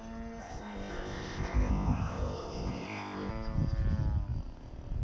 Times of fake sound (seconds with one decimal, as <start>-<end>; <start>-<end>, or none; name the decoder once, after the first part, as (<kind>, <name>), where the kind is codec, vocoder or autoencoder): 0.4-3.3 (codec, ZipCodec)